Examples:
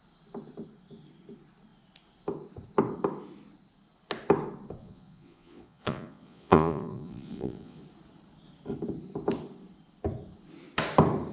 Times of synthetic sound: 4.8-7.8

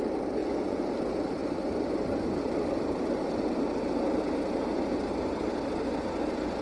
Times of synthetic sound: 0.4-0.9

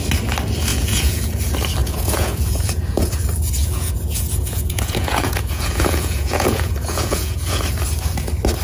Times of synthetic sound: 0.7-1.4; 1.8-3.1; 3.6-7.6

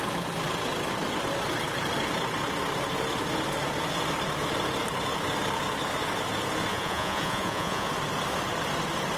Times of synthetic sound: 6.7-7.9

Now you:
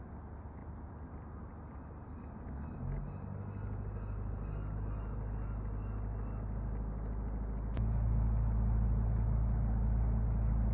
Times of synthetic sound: none

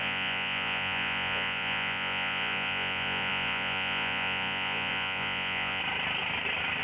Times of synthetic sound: 0.0-5.8

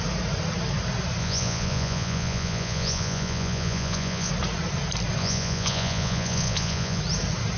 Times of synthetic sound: 1.2-4.3; 5.2-7.0

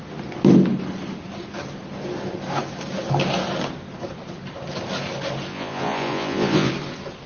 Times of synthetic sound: 5.5-6.7